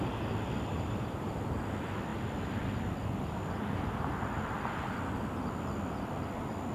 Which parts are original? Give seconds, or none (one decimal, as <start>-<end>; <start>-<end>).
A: 0.0-0.7; 1.3-6.7